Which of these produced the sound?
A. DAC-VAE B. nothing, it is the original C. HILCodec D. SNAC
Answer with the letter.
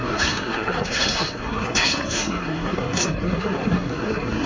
D